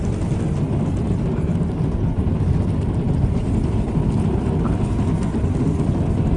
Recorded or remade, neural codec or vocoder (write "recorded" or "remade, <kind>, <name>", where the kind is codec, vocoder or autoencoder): recorded